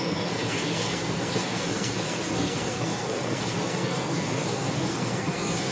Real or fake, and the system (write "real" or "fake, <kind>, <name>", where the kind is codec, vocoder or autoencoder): fake, codec, SNAC